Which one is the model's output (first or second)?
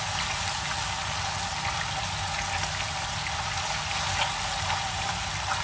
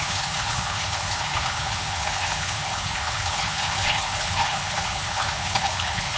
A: second